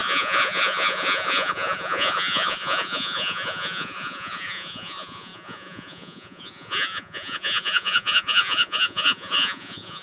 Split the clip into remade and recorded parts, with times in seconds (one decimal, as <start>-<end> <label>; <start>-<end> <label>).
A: 0.0-10.0 remade

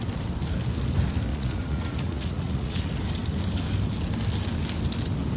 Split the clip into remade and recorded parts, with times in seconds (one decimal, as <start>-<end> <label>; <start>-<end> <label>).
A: 0.0-1.3 recorded; 1.3-2.8 remade; 2.8-5.4 recorded

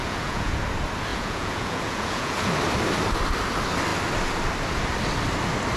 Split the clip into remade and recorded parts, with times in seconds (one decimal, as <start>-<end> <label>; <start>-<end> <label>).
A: 0.0-0.6 remade; 0.6-1.1 recorded; 1.1-2.5 remade; 2.5-5.8 recorded

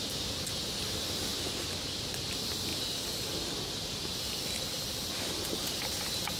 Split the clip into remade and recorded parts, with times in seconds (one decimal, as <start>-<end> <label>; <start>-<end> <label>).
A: 0.0-6.4 recorded